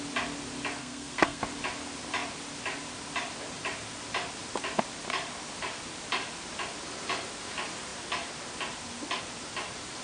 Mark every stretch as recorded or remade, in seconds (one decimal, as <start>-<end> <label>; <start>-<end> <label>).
0.0-0.8 recorded; 0.8-1.4 remade; 1.4-10.0 recorded